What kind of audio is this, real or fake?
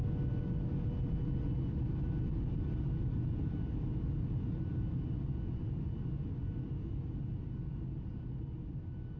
real